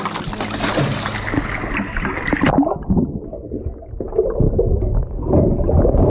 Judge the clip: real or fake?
real